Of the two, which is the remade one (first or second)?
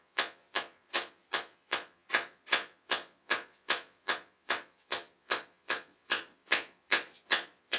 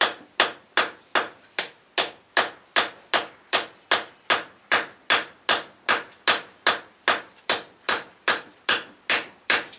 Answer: first